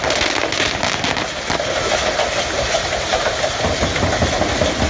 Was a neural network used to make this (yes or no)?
no